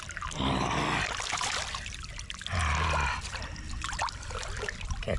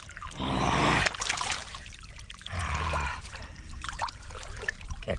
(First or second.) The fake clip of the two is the second